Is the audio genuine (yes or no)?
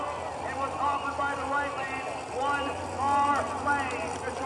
yes